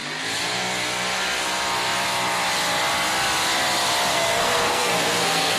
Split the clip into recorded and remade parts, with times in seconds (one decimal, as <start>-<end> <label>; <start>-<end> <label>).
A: 0.0-4.1 recorded; 4.1-5.6 remade